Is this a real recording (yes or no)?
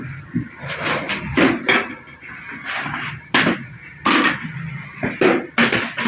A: yes